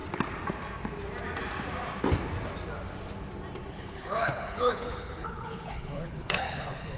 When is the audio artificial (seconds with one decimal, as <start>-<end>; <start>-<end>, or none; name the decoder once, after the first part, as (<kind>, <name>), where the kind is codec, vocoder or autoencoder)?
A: 3.7-7.0 (codec, HILCodec)